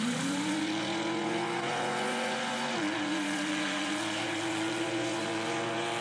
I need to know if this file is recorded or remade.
remade